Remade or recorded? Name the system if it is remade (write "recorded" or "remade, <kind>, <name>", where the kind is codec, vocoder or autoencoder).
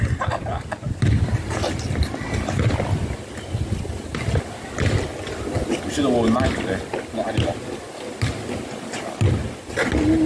recorded